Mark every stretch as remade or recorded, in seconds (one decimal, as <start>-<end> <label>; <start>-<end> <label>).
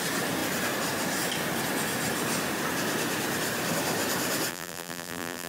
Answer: 0.0-4.5 recorded; 4.5-5.5 remade